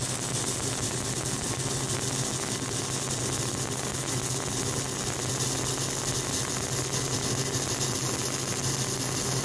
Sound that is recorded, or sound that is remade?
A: recorded